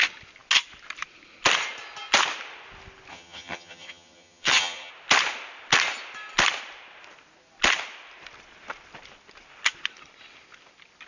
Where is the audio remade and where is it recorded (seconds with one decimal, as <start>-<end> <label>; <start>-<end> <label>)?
0.0-3.1 recorded; 3.1-4.9 remade; 4.9-11.1 recorded